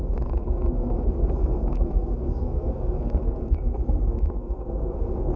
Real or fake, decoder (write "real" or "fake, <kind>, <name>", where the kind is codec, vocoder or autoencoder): fake, codec, SNAC